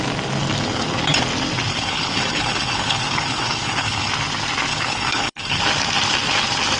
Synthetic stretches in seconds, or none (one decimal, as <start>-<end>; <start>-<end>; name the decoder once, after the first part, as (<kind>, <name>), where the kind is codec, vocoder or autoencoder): 1.7-4.1 (codec, HILCodec); 4.7-5.6